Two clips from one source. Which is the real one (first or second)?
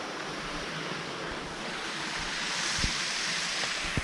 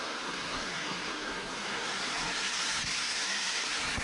first